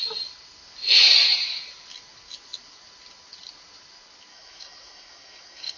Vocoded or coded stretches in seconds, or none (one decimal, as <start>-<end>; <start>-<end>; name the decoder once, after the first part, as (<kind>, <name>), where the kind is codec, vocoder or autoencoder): 4.3-5.8 (autoencoder, DAC-VAE)